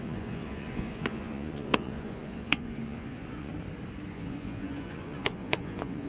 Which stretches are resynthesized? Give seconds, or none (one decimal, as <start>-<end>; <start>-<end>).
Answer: 0.0-3.5; 4.1-6.1